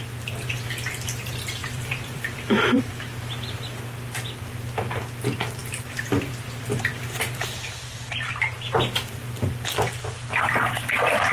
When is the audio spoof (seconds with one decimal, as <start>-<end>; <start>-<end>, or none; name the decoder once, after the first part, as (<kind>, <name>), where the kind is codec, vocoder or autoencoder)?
1.6-2.8 (vocoder, BigVGAN v2); 5.6-7.4